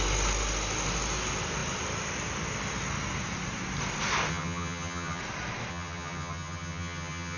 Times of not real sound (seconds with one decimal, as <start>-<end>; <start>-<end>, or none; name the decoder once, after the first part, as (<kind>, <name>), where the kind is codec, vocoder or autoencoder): 4.3-5.2 (vocoder, HiFi-GAN); 5.7-7.4